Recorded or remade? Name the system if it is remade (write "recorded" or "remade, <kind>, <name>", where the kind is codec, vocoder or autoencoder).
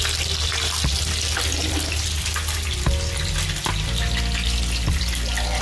recorded